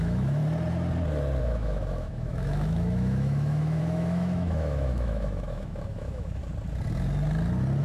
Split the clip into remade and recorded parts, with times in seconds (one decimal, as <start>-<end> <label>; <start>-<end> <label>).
0.0-0.4 remade; 0.4-1.4 recorded; 1.4-6.4 remade; 6.4-7.8 recorded